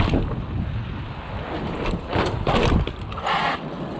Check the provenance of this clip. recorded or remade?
recorded